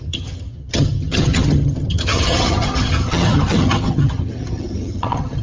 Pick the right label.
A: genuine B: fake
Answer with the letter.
B